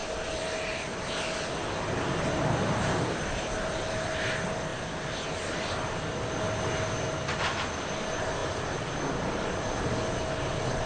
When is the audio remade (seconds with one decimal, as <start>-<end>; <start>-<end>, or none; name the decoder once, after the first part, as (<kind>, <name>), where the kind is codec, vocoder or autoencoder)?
none